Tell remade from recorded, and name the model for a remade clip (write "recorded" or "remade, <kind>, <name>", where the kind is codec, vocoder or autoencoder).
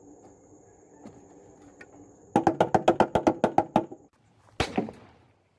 recorded